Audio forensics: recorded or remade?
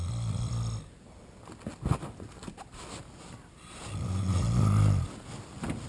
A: recorded